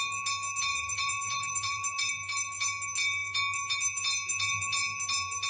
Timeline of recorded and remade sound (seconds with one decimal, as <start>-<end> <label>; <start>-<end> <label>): 0.0-0.7 recorded; 0.7-2.1 remade; 2.1-5.5 recorded